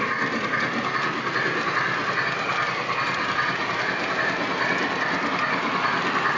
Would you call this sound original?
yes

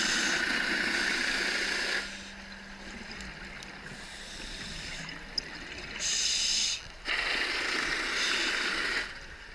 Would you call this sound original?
yes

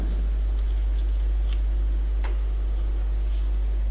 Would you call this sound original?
yes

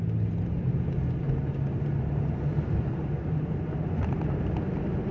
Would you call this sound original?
yes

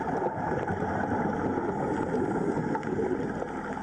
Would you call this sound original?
yes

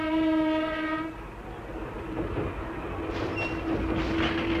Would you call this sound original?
yes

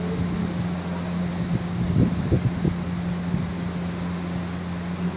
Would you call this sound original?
yes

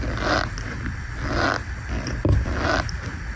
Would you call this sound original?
yes